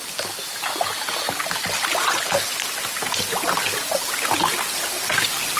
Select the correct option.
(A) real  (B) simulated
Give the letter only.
A